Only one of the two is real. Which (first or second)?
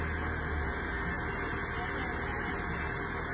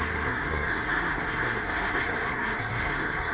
first